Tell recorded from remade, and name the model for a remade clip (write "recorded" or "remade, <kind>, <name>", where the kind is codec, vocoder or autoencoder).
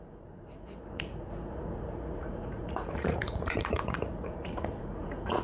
remade, vocoder, Vocos